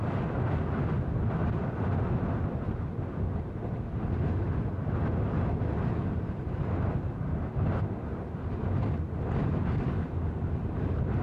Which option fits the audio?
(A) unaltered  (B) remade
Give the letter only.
A